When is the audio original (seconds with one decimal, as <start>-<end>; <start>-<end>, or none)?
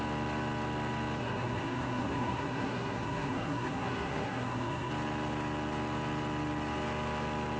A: 0.0-1.2; 4.9-7.6